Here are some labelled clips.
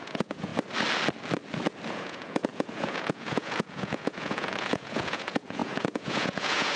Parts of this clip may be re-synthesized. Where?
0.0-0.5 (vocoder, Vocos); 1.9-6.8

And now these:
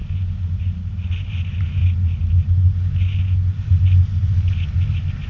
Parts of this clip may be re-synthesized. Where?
none

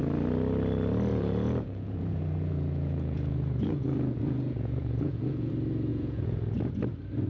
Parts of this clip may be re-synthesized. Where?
1.1-5.5 (vocoder, Vocos); 5.9-6.7

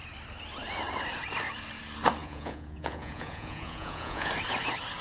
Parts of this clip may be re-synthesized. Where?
2.2-4.3 (vocoder, Vocos)

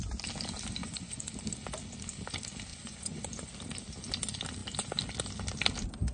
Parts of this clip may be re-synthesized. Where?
0.8-1.3 (vocoder, Vocos); 2.7-3.5

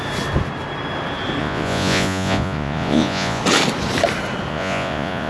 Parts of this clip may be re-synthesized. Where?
1.4-3.4 (vocoder, Vocos); 4.5-5.3

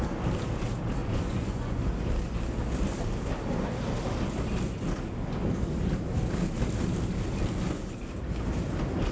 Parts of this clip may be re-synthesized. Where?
1.0-1.8 (vocoder, Vocos)